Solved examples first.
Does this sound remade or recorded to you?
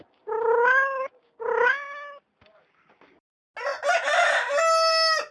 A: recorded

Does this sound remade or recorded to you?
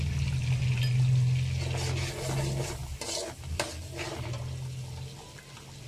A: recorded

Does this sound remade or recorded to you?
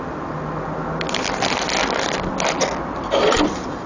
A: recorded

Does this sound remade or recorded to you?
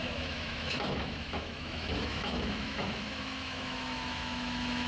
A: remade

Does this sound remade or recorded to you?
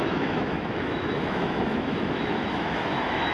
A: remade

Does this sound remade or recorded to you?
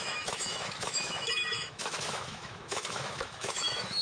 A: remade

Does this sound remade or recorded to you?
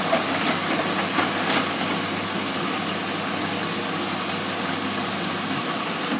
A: recorded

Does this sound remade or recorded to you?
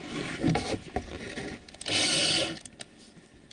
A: recorded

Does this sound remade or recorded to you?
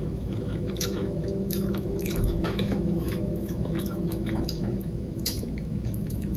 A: remade